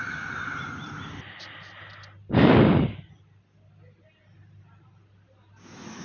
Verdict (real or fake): real